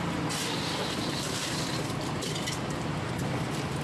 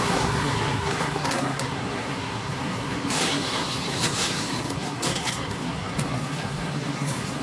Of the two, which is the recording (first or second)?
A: first